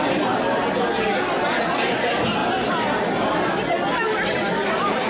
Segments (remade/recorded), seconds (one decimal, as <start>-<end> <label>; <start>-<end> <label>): 0.0-5.1 recorded